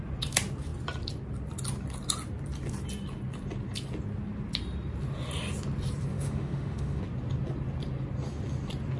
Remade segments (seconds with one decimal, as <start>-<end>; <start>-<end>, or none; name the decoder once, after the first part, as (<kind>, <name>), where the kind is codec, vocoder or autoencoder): 6.1-7.0 (autoencoder, DAC-VAE)